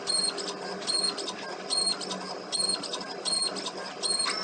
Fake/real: real